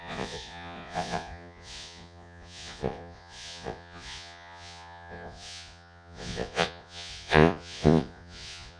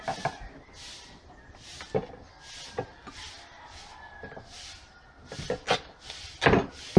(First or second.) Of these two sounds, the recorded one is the second